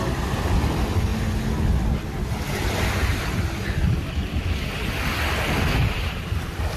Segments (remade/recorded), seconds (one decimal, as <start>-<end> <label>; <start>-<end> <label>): 0.0-6.8 recorded

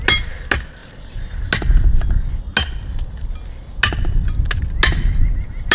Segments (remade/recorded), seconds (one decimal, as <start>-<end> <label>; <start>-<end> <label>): 0.0-5.7 recorded

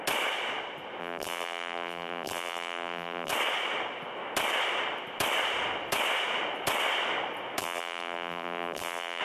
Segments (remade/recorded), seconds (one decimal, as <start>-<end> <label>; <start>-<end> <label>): 0.0-1.0 recorded; 1.0-3.3 remade; 3.3-7.6 recorded; 7.6-9.2 remade

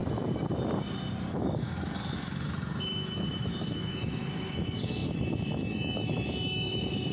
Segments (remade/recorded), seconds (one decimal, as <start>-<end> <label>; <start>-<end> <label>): 0.0-1.3 recorded; 1.3-7.1 remade

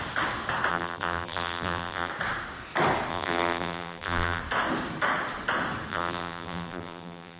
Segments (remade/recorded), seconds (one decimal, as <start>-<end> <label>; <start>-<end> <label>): 0.0-0.7 recorded; 0.7-2.1 remade; 2.1-3.1 recorded; 3.1-4.4 remade; 4.4-5.9 recorded; 5.9-7.4 remade

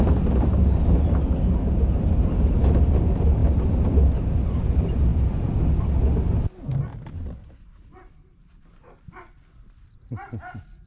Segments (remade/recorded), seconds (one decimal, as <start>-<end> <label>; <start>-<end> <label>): 0.0-10.9 recorded

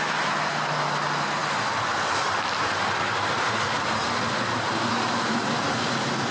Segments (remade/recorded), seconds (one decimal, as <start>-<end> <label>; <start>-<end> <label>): 0.0-6.3 recorded

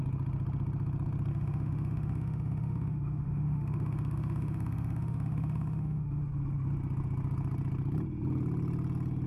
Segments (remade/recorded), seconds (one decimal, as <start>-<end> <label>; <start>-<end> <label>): 0.0-1.3 recorded; 1.3-6.2 remade; 6.2-9.3 recorded